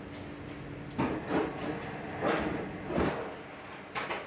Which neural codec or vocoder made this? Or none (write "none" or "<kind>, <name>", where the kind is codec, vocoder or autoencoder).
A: none